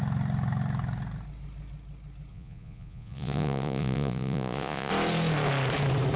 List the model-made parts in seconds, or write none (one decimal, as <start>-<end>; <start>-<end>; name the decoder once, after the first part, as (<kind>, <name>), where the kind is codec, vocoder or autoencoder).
2.3-4.9 (vocoder, Vocos)

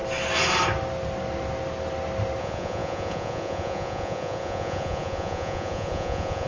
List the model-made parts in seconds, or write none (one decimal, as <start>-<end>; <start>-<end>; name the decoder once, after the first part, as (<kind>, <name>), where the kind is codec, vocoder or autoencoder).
2.4-6.5 (vocoder, Vocos)

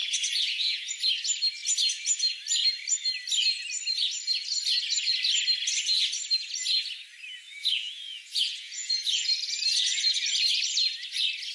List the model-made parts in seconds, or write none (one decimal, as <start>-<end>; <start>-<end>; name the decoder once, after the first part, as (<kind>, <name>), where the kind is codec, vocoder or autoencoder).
0.0-0.9 (vocoder, Vocos); 7.6-9.3

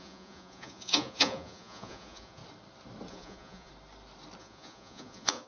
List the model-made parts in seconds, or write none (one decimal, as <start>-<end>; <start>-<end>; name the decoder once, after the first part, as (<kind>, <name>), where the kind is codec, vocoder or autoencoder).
0.0-2.4 (vocoder, Vocos); 3.1-3.7; 4.4-5.5

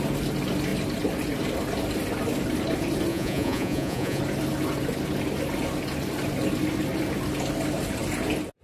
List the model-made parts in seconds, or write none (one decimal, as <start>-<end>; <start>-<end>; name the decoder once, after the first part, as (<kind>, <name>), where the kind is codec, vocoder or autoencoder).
3.1-4.2 (vocoder, Vocos)

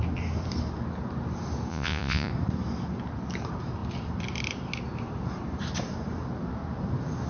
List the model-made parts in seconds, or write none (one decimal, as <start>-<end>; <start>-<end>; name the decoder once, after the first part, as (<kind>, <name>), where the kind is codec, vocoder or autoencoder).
1.7-2.3 (vocoder, Vocos)

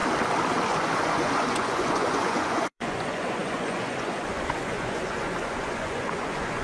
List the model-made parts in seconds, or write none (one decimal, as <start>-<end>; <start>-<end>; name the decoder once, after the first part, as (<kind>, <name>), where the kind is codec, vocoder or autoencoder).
0.7-6.6 (vocoder, Vocos)